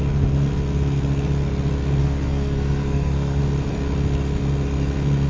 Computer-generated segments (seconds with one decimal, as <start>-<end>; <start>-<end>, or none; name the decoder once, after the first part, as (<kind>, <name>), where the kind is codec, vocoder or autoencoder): 2.0-3.4 (codec, SNAC)